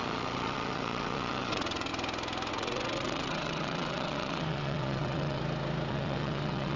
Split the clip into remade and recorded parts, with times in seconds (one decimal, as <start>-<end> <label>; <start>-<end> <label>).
0.0-1.9 remade; 1.9-2.5 recorded; 2.5-5.4 remade; 5.4-5.9 recorded; 5.9-6.8 remade